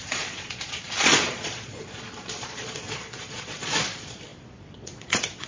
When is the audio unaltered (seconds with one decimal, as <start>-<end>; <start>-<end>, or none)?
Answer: none